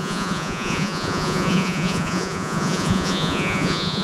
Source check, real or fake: fake